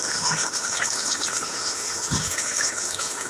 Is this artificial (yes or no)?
yes